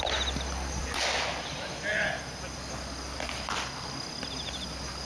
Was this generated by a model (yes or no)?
no